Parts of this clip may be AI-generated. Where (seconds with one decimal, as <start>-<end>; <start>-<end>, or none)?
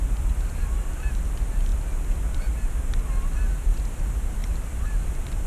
4.4-5.1